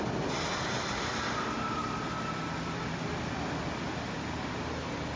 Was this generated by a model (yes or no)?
no